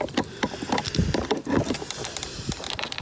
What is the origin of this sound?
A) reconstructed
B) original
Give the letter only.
B